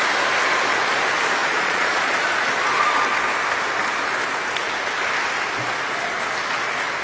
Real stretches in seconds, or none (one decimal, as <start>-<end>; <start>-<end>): 0.0-1.4; 2.1-7.0